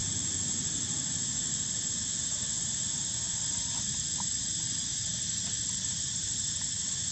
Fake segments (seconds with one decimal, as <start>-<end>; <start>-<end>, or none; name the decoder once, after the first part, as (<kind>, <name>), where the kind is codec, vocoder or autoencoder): none

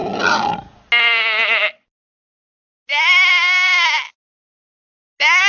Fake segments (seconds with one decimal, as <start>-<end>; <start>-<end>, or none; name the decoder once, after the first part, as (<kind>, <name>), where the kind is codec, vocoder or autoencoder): none

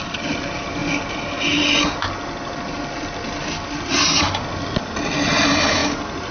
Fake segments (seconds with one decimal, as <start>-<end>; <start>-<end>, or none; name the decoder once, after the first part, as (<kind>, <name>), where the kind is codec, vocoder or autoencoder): 0.0-0.8 (vocoder, BigVGAN v2); 4.6-6.3

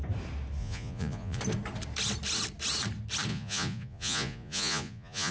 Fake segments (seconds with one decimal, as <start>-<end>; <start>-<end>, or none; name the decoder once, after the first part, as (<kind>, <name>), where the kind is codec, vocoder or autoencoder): 0.6-1.4 (vocoder, Vocos); 3.3-5.3

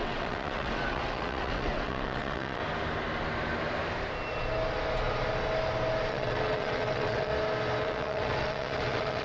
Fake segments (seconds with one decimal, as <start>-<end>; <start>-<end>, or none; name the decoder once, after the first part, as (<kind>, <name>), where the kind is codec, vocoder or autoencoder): 0.0-2.6 (vocoder, WaveNeXt); 6.1-7.3; 7.8-9.2

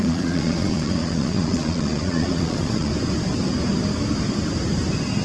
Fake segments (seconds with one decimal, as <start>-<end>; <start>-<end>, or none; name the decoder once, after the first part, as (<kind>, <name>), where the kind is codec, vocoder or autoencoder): 0.0-2.9 (vocoder, Vocos)

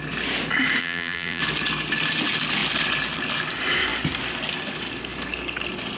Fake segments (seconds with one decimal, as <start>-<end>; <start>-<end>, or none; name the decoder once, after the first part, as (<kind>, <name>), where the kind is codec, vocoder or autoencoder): 0.8-1.4 (vocoder, BigVGAN v2)